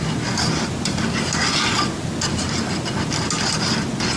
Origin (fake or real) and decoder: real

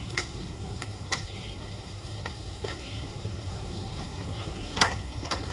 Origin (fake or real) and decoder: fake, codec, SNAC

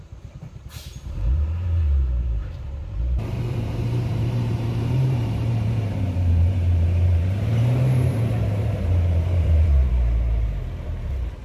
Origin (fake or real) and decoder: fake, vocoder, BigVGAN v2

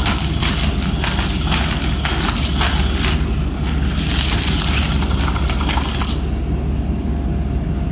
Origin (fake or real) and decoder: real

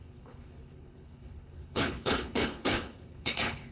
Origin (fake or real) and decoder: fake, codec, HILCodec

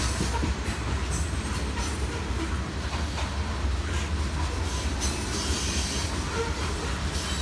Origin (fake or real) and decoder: real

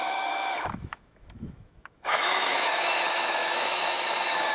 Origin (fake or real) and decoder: fake, autoencoder, DAC-VAE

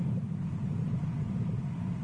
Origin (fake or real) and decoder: real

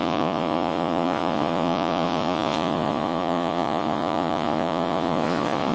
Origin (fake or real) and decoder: fake, vocoder, Vocos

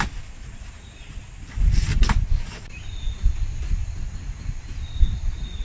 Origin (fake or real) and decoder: real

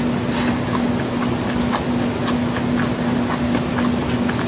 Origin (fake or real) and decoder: real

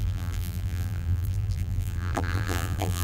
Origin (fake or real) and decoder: fake, vocoder, BigVGAN v2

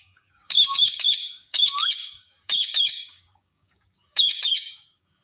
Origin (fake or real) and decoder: fake, codec, DAC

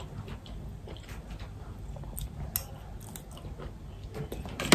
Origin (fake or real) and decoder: real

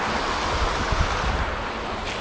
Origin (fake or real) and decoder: real